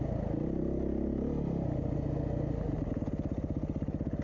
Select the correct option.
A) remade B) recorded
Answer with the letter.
B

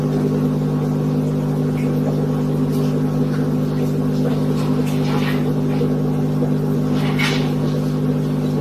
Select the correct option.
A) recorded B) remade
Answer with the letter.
A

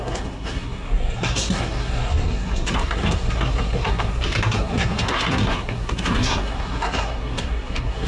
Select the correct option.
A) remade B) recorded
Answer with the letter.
A